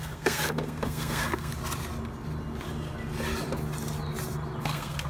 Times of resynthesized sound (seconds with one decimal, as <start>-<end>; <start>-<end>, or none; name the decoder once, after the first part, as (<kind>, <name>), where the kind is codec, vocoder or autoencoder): 0.0-1.5 (codec, SNAC); 4.6-5.1